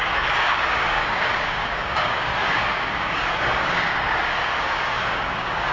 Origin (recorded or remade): remade